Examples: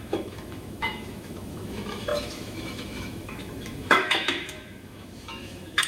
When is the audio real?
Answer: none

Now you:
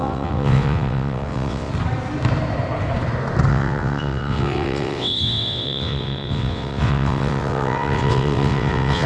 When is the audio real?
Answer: 1.7-3.5

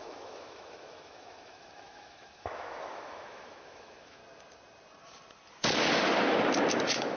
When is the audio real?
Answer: 4.2-6.8

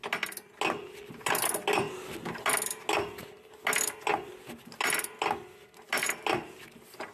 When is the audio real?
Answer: 0.0-7.1

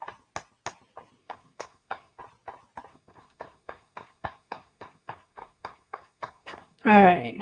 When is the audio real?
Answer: 0.0-1.2; 2.2-2.9

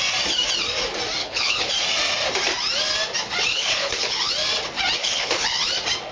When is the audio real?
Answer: 0.0-1.2; 1.7-3.5; 4.3-5.0; 5.6-6.1

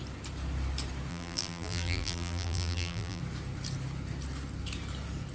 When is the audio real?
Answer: 0.0-1.1; 3.2-5.3